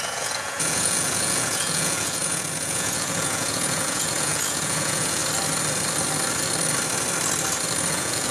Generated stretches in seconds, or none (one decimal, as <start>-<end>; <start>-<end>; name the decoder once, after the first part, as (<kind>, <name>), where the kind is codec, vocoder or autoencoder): 0.0-5.2 (vocoder, Vocos); 7.9-8.3